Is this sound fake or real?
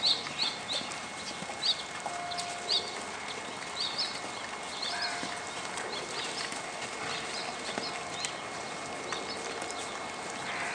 real